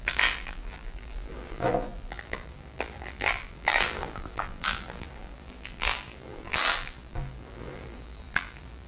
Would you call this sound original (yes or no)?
no